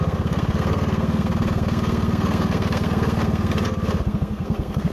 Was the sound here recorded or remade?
remade